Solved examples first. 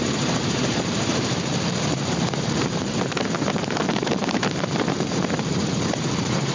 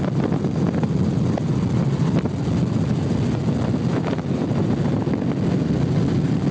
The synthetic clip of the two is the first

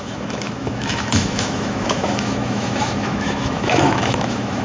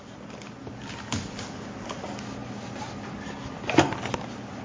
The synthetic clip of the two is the first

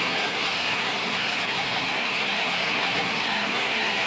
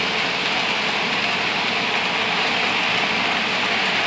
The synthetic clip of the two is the first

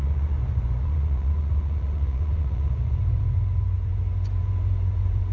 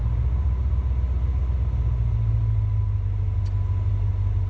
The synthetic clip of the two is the first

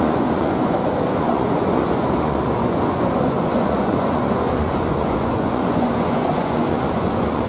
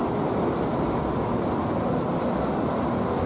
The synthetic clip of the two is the first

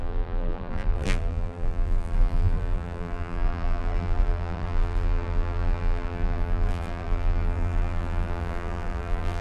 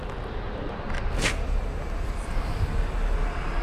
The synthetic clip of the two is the first